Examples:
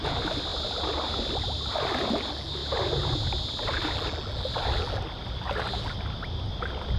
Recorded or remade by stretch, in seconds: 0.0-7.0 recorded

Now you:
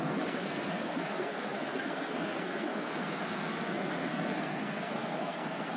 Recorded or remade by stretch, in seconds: 0.0-5.8 remade

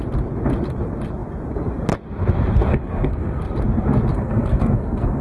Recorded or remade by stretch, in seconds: 0.0-2.7 recorded; 2.7-3.4 remade; 3.4-4.1 recorded; 4.1-5.2 remade

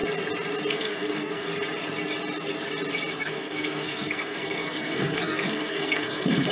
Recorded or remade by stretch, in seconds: 0.0-0.7 recorded; 0.7-1.5 remade; 1.5-3.1 recorded; 3.1-6.5 remade

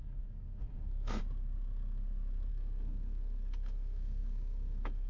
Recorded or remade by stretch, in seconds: 0.0-1.2 remade; 1.2-2.5 recorded; 2.5-5.1 remade

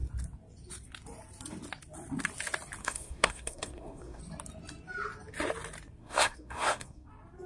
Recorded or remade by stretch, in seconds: 0.0-2.8 recorded; 2.8-4.2 remade; 4.2-6.0 recorded; 6.0-7.1 remade; 7.1-7.5 recorded